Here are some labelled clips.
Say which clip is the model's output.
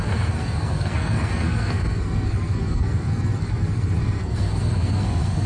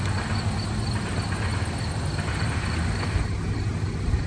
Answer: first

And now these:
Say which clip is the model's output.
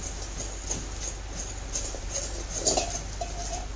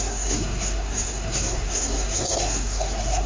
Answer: second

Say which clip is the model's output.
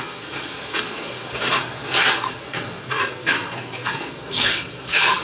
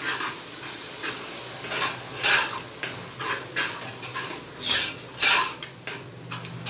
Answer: first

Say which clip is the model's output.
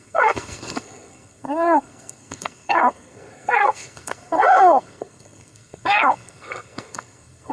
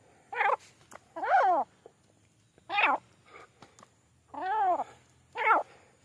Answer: first